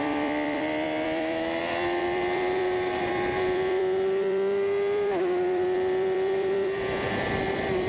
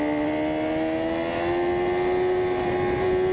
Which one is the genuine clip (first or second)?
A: second